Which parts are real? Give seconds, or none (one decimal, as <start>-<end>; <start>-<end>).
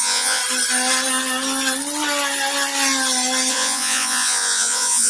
0.4-3.5